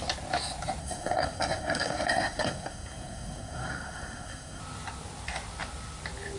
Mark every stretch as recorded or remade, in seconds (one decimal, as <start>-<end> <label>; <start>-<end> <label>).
0.0-0.8 recorded; 0.8-4.6 remade; 4.6-6.4 recorded